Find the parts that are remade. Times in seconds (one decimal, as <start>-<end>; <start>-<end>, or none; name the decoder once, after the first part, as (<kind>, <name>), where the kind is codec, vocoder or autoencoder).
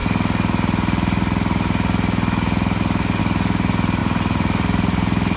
4.0-5.4 (vocoder, BigVGAN v2)